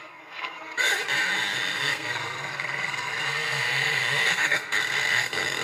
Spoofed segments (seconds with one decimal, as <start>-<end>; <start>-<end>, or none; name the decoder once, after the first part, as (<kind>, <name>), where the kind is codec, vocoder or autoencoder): 0.0-0.9 (codec, SNAC); 1.7-5.6